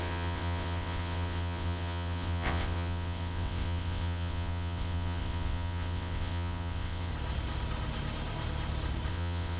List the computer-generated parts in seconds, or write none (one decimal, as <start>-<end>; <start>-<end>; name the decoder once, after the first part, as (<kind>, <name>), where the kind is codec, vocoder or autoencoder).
0.0-7.1 (vocoder, WaveNeXt); 9.1-9.6